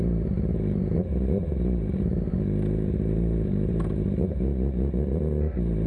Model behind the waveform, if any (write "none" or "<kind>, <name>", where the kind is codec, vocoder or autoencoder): vocoder, BigVGAN v2